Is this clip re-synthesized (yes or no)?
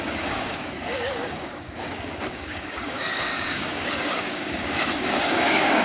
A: yes